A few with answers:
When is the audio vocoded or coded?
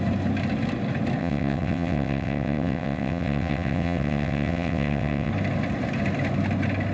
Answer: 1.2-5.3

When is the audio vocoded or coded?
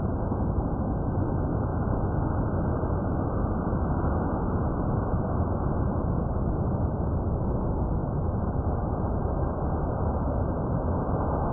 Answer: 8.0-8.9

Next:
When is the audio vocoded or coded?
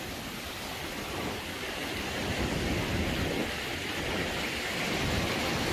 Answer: none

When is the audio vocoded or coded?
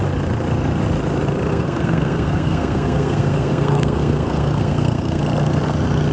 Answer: 1.5-5.2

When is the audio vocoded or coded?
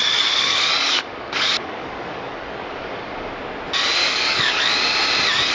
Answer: 0.0-3.3; 4.0-4.7